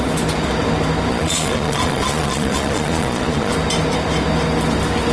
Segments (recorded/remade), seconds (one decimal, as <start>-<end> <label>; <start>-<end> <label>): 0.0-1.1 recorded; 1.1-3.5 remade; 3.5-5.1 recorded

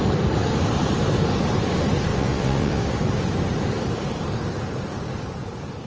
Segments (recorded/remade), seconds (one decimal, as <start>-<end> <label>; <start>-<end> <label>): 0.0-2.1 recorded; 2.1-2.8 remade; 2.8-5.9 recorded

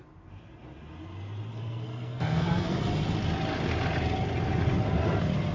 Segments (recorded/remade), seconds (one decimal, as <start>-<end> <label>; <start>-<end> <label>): 0.0-1.5 recorded; 1.5-2.8 remade; 2.8-5.5 recorded

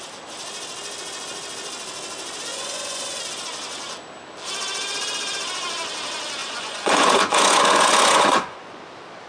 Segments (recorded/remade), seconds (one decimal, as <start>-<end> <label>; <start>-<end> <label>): 0.0-2.5 recorded; 2.5-3.2 remade; 3.2-6.4 recorded; 6.4-8.8 remade; 8.8-9.3 recorded

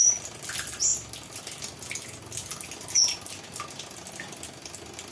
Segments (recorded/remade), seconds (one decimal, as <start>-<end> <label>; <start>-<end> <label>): 0.0-5.1 recorded